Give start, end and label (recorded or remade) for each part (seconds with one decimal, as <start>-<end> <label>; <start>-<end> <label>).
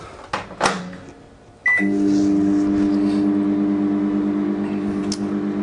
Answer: 0.0-5.6 recorded